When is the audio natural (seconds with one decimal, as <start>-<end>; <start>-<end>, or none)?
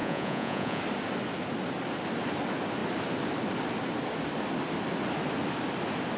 0.8-6.2